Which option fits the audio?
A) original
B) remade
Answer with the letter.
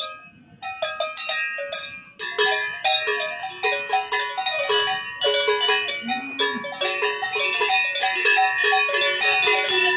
A